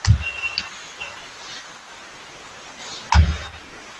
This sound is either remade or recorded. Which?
recorded